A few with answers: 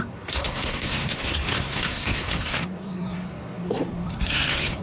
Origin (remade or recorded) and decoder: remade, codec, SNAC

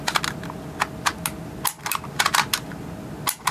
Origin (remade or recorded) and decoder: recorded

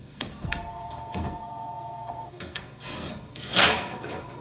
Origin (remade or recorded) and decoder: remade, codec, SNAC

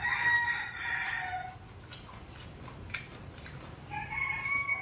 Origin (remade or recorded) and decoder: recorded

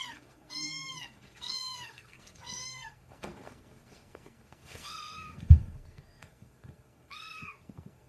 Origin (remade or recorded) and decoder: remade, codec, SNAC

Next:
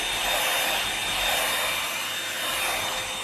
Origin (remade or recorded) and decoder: recorded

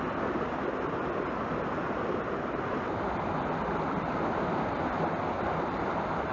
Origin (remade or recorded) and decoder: recorded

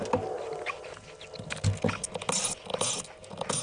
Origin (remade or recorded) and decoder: recorded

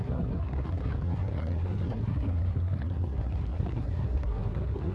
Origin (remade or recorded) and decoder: remade, codec, SNAC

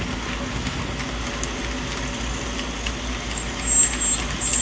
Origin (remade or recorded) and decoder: recorded